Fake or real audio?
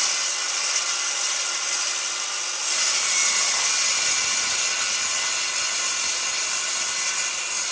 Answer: real